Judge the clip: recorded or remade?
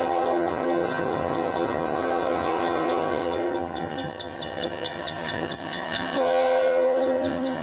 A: remade